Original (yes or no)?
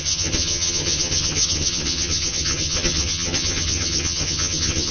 no